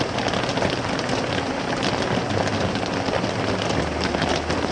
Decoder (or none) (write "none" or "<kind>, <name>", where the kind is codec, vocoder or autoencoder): vocoder, BigVGAN v2